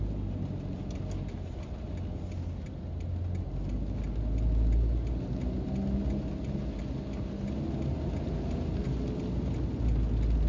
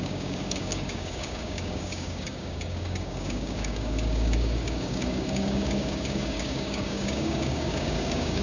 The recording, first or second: first